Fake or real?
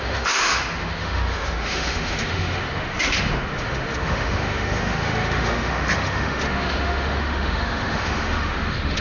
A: fake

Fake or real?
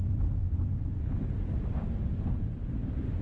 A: real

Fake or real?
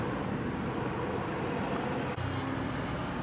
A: real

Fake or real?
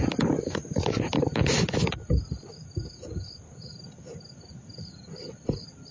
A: real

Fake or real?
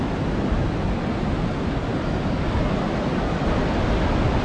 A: real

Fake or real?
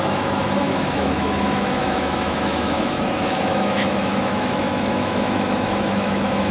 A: fake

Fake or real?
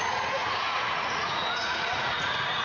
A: fake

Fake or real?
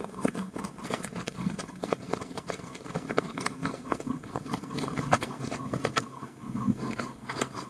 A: fake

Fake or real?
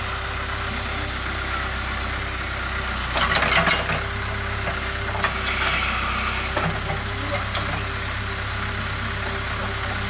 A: real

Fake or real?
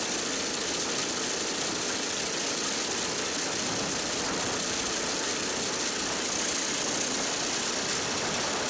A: real